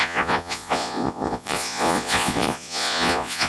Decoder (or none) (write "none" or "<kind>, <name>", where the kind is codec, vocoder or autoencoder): vocoder, Vocos